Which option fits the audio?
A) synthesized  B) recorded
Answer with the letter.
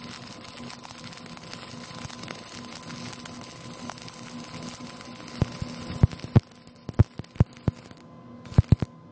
B